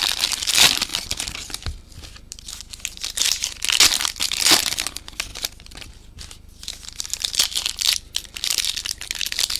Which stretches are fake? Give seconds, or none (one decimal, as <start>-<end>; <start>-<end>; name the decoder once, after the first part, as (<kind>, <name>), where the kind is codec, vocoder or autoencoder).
none